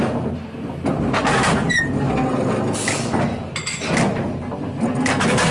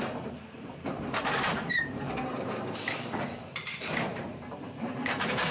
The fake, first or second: second